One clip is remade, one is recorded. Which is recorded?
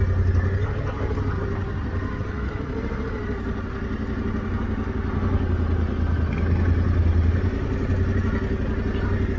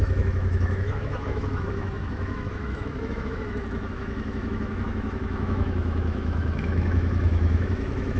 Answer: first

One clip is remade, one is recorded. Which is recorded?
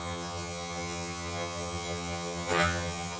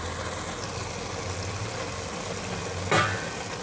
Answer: second